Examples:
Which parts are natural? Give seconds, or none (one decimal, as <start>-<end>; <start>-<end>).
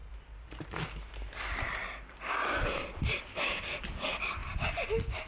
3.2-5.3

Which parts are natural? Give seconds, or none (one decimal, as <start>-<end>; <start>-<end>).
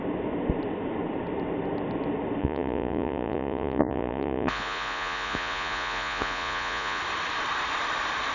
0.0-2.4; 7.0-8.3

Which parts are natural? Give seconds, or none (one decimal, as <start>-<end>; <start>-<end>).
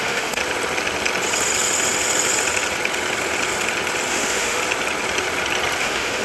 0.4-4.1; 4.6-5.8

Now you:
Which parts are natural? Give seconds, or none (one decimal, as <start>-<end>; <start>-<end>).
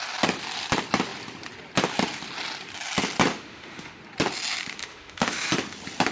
0.0-3.3; 4.0-4.8; 5.5-6.1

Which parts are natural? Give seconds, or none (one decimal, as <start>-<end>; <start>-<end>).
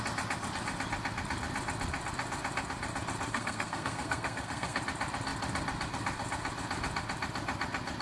0.0-3.3; 4.8-8.0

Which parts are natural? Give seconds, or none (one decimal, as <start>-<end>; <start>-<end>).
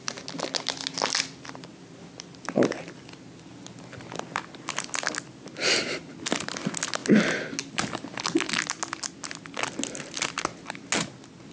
0.0-11.5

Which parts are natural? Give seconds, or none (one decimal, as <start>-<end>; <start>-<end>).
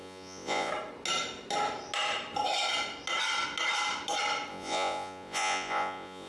0.7-4.5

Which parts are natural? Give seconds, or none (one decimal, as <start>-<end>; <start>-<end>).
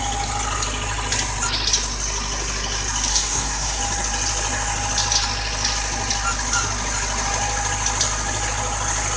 0.0-3.1; 3.8-9.2